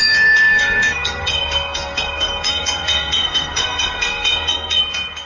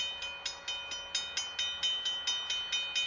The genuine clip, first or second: second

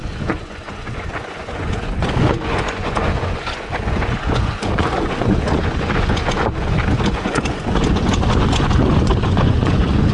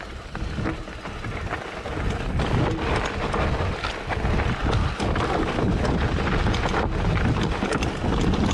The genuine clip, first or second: second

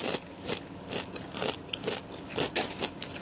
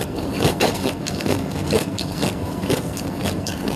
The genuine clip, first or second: first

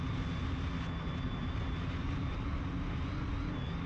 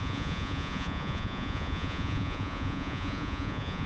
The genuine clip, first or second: first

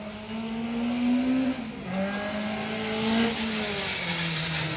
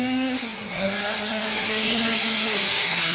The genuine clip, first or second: first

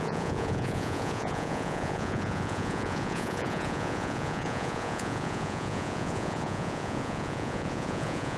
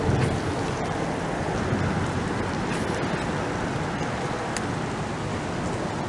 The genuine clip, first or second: second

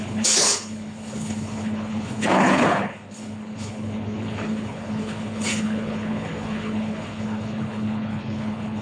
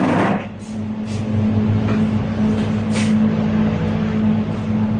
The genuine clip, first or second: second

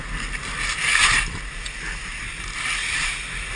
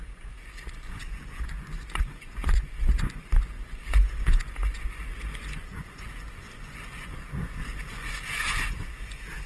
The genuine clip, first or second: first